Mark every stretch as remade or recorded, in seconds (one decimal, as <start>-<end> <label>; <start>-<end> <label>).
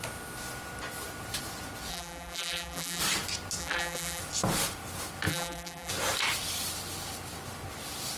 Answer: 0.0-1.9 recorded; 1.9-3.0 remade; 3.0-3.6 recorded; 3.6-4.2 remade; 4.2-5.3 recorded; 5.3-5.9 remade; 5.9-8.2 recorded